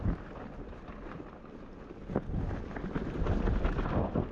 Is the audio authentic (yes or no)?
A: yes